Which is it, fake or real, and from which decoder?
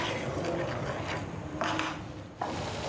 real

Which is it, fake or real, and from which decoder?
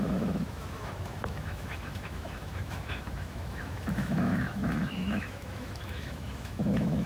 fake, autoencoder, DAC-VAE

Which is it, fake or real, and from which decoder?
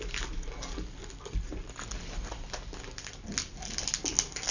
real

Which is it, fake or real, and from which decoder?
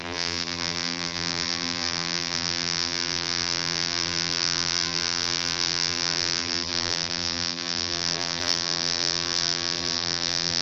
fake, vocoder, BigVGAN v2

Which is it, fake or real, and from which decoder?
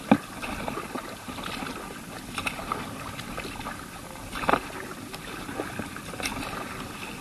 real